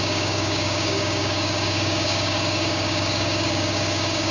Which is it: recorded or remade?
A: remade